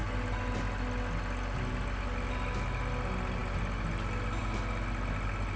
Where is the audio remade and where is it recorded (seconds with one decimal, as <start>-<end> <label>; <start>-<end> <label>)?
0.0-5.6 recorded